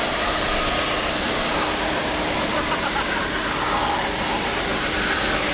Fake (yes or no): no